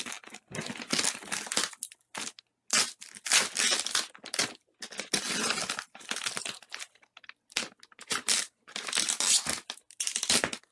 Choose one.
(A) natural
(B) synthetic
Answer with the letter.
A